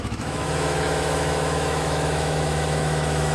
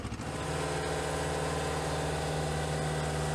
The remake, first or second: first